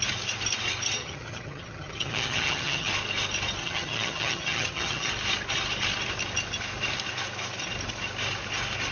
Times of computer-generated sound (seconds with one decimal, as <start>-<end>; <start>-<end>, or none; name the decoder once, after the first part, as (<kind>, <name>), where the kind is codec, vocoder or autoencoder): 1.0-2.9 (vocoder, HiFi-GAN); 3.6-5.1